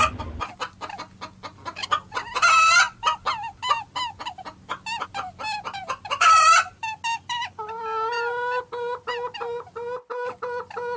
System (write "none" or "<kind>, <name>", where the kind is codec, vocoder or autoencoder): none